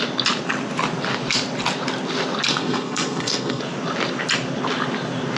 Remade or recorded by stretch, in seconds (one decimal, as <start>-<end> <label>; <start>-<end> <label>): 0.0-2.5 recorded; 2.5-3.6 remade; 3.6-5.4 recorded